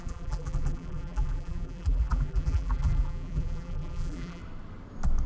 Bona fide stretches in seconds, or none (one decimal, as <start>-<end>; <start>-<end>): 4.4-5.3